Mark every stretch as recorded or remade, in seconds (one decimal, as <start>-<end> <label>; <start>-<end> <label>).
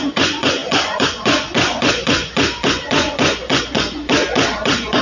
0.0-5.0 remade